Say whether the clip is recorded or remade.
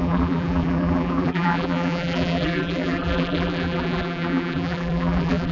remade